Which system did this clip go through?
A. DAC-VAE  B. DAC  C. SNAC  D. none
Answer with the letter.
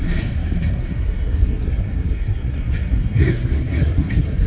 C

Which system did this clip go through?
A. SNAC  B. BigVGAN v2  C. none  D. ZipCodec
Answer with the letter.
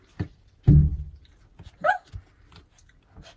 C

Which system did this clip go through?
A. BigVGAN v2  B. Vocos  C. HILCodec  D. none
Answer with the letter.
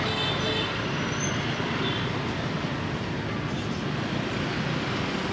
D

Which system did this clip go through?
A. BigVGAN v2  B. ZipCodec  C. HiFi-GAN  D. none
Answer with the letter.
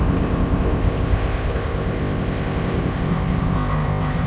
B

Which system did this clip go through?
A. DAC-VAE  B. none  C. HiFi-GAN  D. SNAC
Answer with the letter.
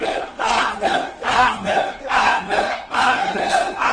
D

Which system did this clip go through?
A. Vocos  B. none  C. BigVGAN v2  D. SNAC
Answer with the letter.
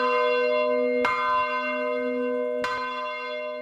B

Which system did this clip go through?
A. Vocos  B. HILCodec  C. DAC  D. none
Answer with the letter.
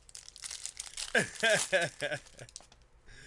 D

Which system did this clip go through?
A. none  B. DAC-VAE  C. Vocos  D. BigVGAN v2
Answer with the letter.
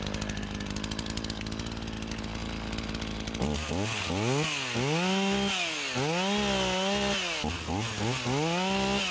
A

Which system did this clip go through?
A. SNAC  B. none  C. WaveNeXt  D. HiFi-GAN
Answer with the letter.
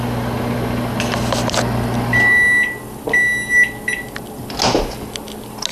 B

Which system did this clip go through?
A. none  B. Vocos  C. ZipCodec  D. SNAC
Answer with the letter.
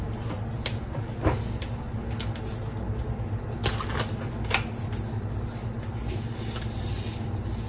A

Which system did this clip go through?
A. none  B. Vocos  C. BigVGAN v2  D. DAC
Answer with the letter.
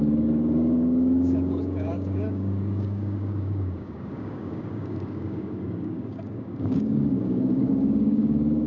D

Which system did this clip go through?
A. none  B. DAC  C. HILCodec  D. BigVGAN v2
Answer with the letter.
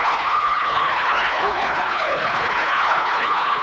C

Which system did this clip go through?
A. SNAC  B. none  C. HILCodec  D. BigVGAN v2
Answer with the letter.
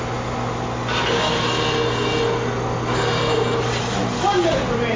B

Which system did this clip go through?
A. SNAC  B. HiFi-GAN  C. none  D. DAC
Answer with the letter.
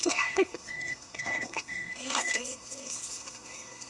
A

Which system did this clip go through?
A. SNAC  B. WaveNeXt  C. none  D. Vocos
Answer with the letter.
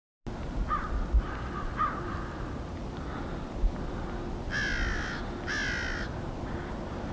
C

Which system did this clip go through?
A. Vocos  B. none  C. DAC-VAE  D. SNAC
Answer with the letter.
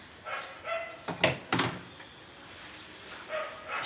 B